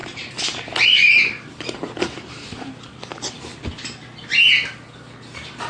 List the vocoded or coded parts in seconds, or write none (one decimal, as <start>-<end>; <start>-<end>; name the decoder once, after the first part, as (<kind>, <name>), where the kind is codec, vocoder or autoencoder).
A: 0.0-3.4 (vocoder, BigVGAN v2)

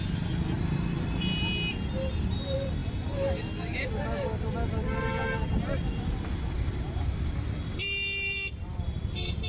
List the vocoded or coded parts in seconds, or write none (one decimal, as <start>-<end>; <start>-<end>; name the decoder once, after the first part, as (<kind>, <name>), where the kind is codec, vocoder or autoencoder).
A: none

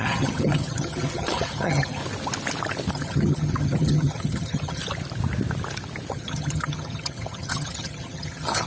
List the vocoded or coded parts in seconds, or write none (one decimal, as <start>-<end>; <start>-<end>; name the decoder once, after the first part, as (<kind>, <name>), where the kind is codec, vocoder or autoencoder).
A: 0.0-2.0 (vocoder, HiFi-GAN); 2.9-4.8; 6.1-8.7

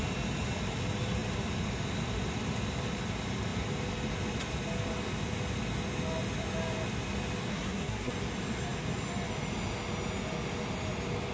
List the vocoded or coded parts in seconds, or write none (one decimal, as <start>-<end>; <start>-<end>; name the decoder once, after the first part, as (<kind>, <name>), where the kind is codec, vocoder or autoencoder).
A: 7.5-8.1 (codec, SNAC)

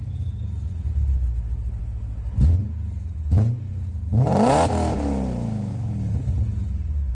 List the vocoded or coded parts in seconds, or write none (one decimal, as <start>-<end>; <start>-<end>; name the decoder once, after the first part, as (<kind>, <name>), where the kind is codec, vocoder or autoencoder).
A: none

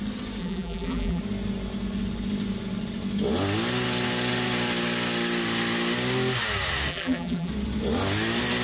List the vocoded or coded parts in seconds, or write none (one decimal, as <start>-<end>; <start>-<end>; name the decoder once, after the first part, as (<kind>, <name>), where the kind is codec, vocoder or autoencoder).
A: 0.4-1.2 (vocoder, BigVGAN v2); 6.9-7.5

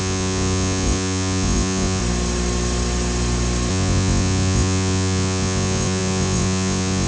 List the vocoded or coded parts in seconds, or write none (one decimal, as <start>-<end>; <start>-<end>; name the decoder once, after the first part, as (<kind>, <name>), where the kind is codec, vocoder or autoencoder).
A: 0.0-2.0 (vocoder, Vocos); 3.7-7.1

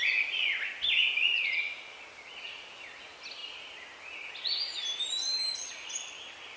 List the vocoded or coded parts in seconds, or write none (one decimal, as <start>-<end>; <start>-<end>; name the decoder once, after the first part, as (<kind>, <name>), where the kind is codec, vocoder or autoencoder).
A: none